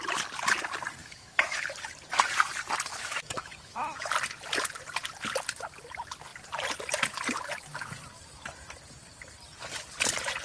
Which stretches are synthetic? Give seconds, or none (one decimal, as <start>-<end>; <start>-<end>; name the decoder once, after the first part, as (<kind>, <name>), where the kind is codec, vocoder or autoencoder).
1.0-1.6 (autoencoder, DAC-VAE); 2.9-4.1